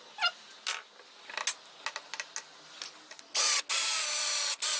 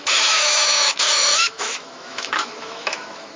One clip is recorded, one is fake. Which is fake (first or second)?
second